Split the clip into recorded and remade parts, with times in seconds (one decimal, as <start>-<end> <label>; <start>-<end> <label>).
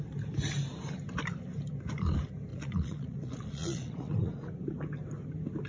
0.0-2.5 recorded; 2.5-4.3 remade; 4.3-5.7 recorded